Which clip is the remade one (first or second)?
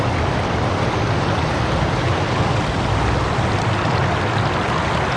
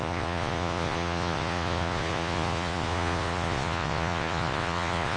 second